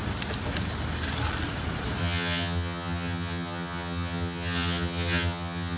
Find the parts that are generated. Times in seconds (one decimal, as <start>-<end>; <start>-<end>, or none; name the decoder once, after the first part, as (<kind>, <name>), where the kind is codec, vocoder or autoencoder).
2.0-5.8 (vocoder, HiFi-GAN)